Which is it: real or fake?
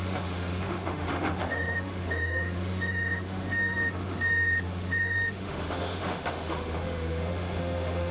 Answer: fake